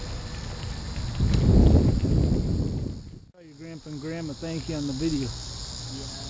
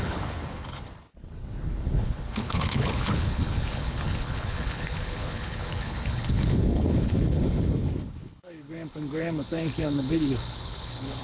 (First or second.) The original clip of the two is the first